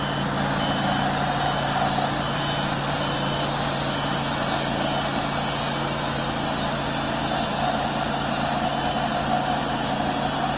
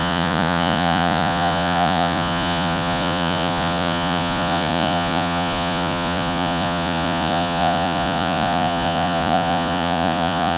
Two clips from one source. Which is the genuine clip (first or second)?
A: first